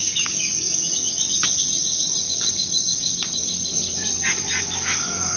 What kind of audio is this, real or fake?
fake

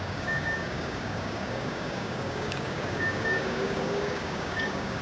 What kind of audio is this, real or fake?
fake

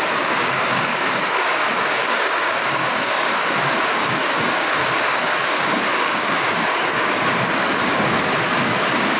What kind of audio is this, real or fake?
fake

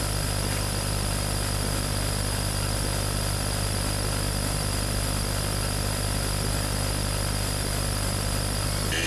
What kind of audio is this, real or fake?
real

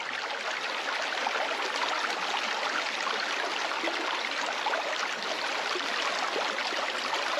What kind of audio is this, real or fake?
real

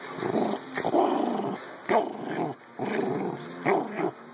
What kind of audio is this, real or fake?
real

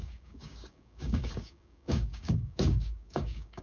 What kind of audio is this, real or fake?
fake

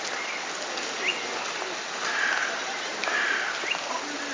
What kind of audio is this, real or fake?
real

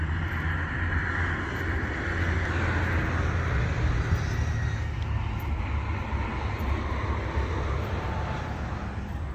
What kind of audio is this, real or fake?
real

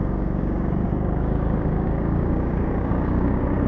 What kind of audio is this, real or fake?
fake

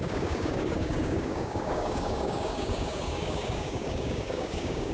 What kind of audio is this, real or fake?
fake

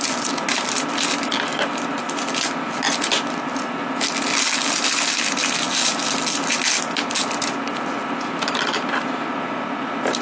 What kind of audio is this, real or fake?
real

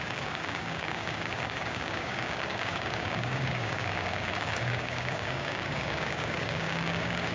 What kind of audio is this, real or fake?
fake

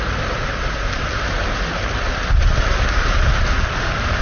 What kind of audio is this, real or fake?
real